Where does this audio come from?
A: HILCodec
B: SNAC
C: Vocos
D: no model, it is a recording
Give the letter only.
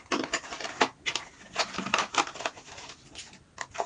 D